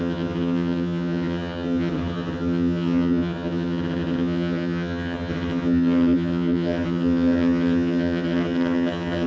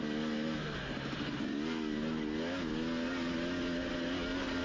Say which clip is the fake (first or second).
first